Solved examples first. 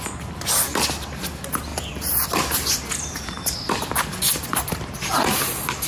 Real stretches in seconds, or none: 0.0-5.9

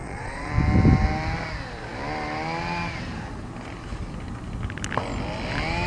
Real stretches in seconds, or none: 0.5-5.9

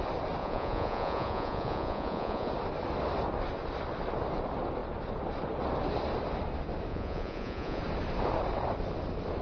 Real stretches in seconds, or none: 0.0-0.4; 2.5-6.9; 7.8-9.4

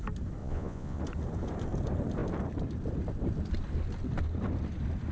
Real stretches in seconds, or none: 0.0-0.4; 1.0-5.1

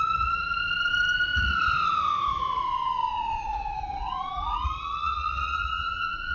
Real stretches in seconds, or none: 1.3-3.1

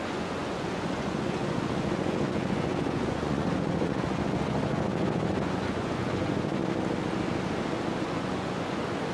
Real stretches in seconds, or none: 6.6-8.0

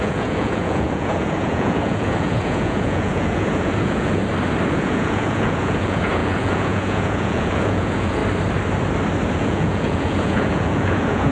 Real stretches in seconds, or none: 4.2-4.7; 8.2-9.3

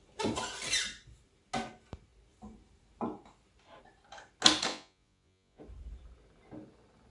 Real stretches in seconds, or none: 0.0-4.7; 5.6-7.1